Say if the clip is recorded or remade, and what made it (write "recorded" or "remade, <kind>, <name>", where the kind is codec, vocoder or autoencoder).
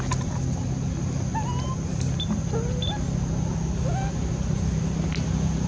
recorded